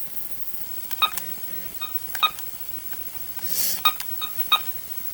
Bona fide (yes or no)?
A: no